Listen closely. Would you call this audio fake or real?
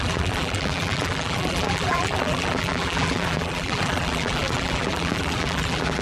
fake